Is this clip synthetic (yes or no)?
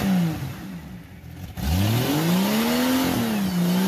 no